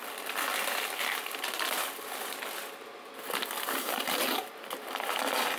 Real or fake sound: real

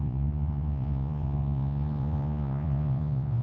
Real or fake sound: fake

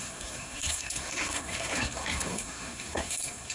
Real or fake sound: fake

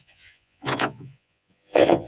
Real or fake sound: fake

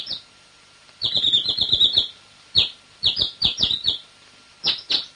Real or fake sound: real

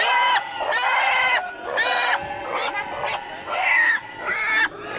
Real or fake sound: real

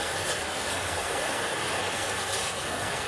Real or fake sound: fake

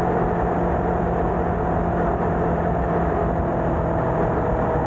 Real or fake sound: real